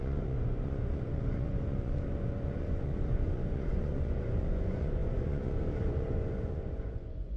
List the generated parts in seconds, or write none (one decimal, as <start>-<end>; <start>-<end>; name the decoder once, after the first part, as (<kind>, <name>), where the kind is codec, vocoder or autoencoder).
0.0-7.4 (vocoder, Vocos)